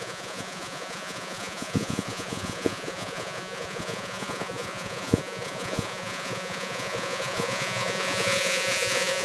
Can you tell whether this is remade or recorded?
remade